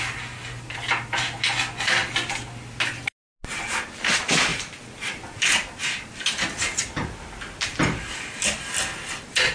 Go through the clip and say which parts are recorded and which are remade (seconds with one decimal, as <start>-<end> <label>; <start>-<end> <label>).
0.0-9.5 recorded